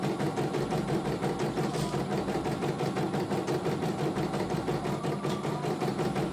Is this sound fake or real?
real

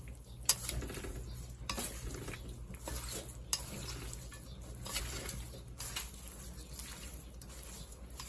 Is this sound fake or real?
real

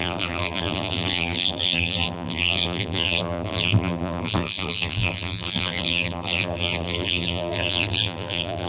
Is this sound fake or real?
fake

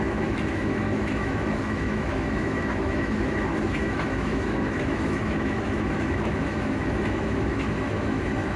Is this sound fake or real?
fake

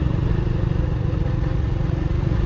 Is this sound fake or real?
fake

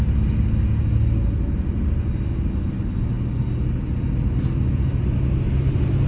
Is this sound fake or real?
real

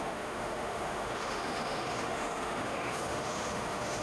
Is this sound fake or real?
fake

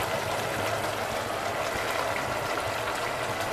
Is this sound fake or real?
real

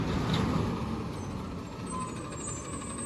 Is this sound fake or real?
real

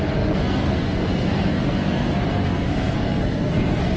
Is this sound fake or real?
fake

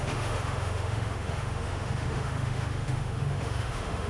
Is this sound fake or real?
fake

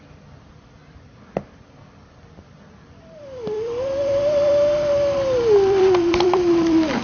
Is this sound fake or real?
fake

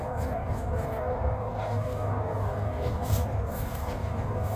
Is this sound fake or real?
fake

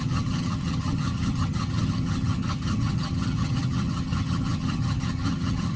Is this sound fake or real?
fake